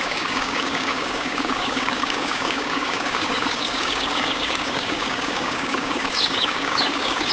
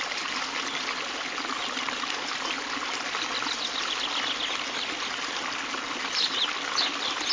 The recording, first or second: second